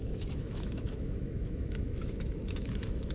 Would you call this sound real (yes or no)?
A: no